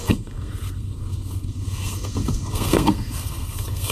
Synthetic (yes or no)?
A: yes